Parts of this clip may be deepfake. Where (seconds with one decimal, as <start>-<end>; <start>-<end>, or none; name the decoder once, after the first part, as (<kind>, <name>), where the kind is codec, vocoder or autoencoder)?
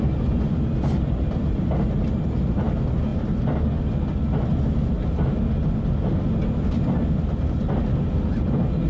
none